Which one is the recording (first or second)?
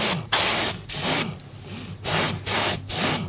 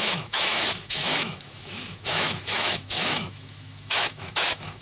first